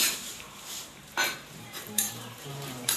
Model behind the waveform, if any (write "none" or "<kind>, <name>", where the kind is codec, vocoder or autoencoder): vocoder, BigVGAN v2